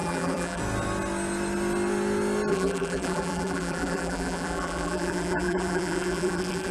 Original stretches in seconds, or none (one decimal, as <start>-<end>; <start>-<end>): 0.6-2.5